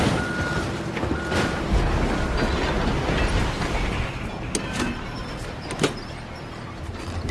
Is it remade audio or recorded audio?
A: recorded